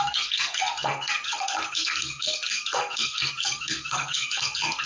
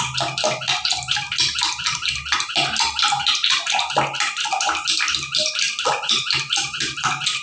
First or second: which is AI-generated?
first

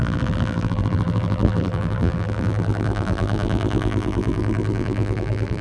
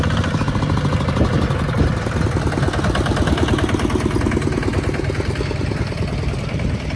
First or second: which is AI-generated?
first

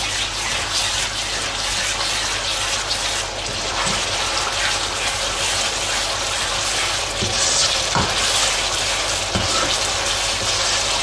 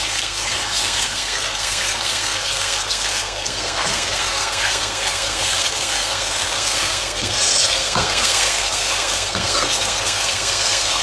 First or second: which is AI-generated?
second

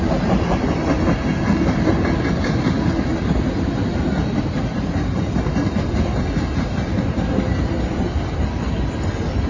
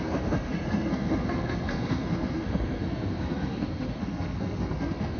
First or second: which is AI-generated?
second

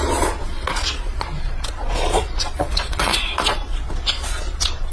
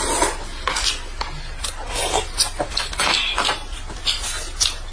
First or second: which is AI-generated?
first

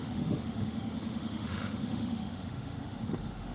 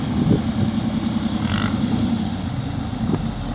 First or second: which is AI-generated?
first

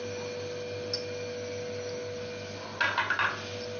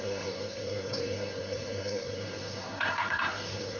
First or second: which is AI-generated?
second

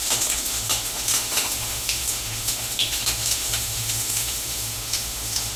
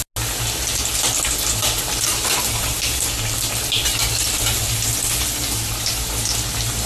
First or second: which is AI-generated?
first